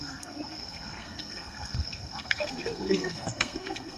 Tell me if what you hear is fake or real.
fake